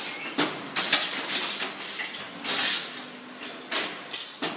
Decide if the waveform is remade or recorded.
recorded